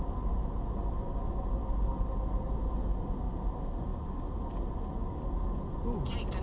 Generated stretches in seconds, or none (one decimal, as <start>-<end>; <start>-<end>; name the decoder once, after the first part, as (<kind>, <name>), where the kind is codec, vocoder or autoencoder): none